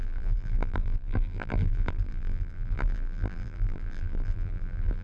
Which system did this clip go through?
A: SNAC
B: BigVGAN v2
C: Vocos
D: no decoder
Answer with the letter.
B